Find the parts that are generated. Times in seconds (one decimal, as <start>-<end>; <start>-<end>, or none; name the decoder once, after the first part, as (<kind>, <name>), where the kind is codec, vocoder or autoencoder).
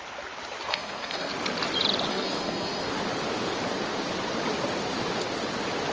0.7-1.3 (codec, SNAC); 2.1-2.9